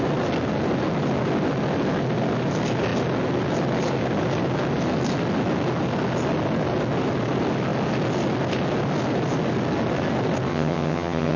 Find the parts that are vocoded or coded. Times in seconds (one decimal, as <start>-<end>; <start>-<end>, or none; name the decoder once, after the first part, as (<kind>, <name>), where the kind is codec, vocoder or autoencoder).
10.5-11.4 (vocoder, HiFi-GAN)